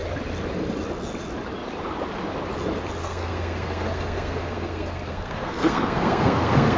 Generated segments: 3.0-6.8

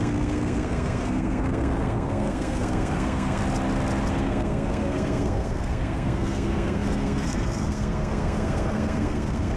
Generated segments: 0.0-3.4; 4.1-9.6

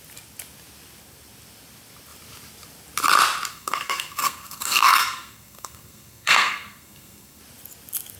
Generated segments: 3.5-7.4